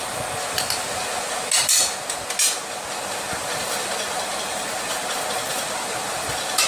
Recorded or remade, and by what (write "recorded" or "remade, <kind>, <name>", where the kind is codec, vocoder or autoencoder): recorded